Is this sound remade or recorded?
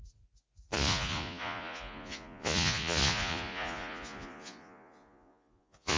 remade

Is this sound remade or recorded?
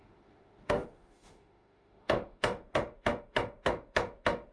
remade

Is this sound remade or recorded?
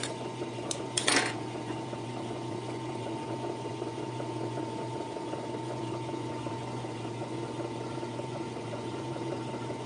remade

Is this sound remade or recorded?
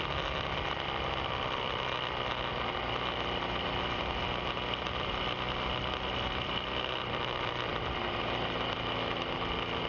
recorded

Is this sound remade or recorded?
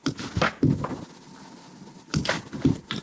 recorded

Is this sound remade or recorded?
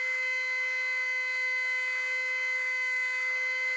remade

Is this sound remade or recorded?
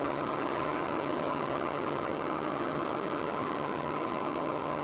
remade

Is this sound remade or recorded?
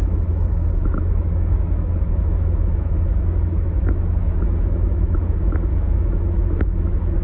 remade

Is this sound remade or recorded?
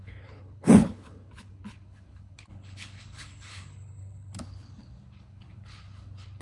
remade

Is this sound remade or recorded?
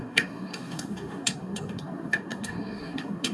remade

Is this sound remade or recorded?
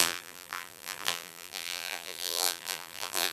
remade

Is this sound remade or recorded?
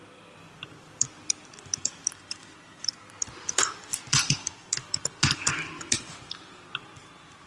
remade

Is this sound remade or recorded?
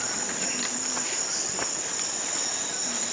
recorded